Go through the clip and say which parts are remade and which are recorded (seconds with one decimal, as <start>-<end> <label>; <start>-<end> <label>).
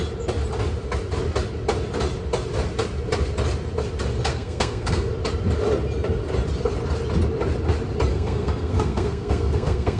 0.0-4.3 recorded; 4.3-5.1 remade; 5.1-8.1 recorded; 8.1-10.0 remade